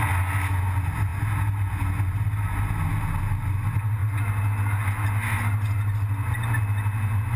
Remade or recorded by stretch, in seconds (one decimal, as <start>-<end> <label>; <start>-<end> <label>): 0.0-7.4 recorded